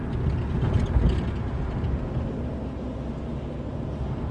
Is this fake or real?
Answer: real